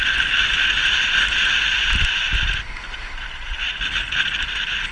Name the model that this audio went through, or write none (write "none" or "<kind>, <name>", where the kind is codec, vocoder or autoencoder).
vocoder, BigVGAN v2